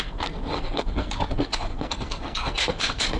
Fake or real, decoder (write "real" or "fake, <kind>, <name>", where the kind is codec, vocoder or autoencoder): fake, codec, SNAC